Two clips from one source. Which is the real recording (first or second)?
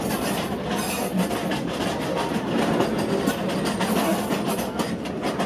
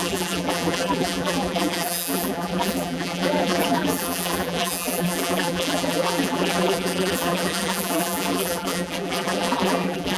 first